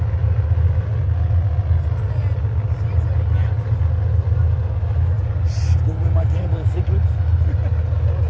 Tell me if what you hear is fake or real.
real